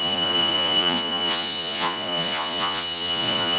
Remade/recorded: remade